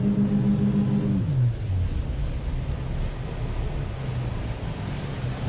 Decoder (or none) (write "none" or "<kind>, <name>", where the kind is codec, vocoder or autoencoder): none